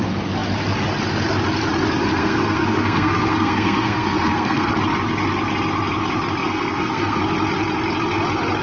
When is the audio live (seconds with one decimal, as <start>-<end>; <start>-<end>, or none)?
0.0-2.2; 4.7-6.4; 7.2-8.6